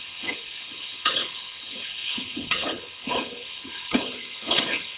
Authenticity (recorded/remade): remade